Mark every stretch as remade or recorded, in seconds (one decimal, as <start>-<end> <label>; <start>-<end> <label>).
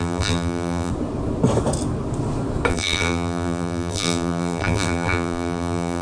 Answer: 0.0-0.9 remade; 0.9-2.7 recorded; 2.7-6.0 remade